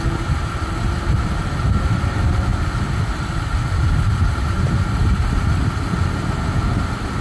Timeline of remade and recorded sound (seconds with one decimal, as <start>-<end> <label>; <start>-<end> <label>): 0.0-2.5 recorded; 2.5-3.8 remade; 3.8-7.2 recorded